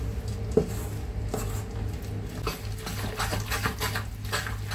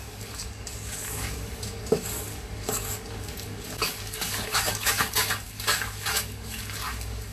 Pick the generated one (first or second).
second